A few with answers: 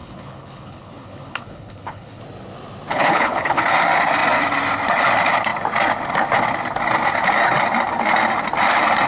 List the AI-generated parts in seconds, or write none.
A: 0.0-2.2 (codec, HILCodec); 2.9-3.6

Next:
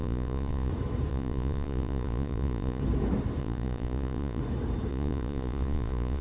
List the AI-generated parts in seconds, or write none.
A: 0.0-0.7 (vocoder, Vocos); 1.1-2.8; 3.4-4.4; 4.9-6.2

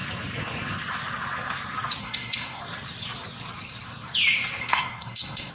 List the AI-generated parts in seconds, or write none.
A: 2.0-2.6 (codec, SNAC); 4.6-5.5

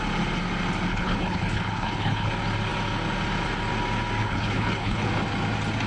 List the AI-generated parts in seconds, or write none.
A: 0.9-2.3 (codec, HILCodec); 4.2-5.1

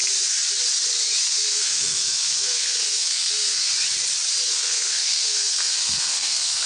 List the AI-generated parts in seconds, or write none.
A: 1.2-3.7 (codec, SNAC); 4.5-6.7

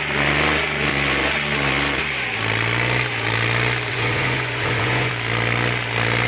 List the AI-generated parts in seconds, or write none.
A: 0.9-2.0 (vocoder, Vocos); 3.9-5.1